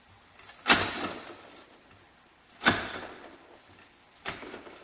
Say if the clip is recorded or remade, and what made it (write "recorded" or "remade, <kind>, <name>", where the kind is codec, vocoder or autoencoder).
remade, vocoder, BigVGAN v2